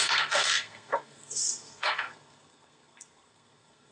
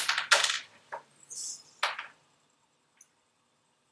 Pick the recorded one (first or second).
second